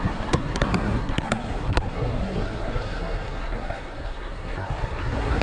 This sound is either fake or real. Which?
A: fake